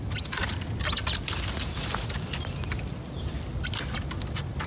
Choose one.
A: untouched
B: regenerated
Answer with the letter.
A